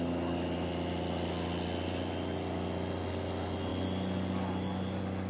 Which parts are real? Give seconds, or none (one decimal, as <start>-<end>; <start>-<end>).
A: 0.0-5.3